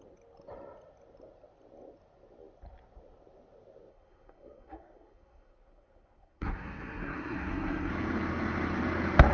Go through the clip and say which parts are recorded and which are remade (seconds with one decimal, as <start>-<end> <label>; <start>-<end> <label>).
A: 0.0-3.9 recorded; 3.9-7.9 remade; 7.9-9.3 recorded